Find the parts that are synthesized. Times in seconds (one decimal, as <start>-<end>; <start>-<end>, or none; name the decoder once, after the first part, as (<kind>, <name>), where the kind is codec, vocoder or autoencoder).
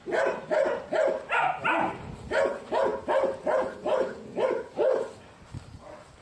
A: none